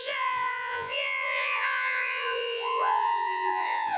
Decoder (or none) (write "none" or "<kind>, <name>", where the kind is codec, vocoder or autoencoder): vocoder, Vocos